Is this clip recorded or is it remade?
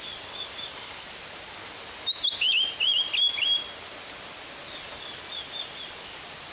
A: recorded